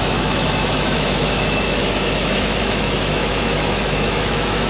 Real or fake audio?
fake